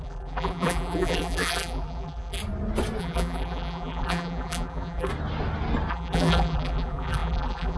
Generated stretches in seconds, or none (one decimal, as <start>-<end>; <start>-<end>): 0.0-2.4; 3.0-5.1; 5.9-7.8